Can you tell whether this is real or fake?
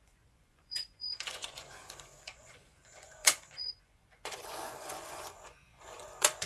fake